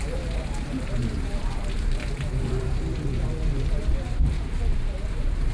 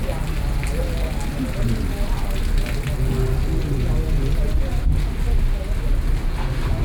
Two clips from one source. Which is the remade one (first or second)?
first